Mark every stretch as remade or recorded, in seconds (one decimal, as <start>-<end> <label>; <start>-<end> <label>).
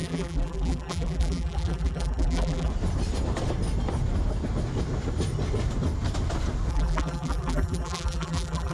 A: 0.0-2.7 remade; 2.7-6.7 recorded; 6.7-8.7 remade